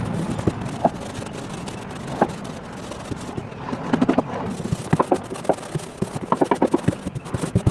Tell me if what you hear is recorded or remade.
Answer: recorded